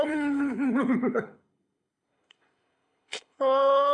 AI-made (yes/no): yes